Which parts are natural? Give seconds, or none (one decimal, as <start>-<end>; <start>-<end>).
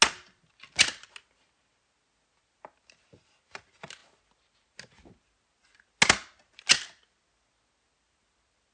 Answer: 0.0-8.7